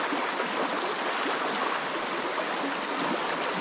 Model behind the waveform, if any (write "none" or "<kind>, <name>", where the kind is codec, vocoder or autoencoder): none